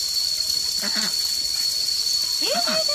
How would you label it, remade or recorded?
recorded